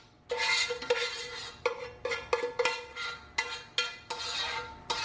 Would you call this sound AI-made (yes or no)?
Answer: no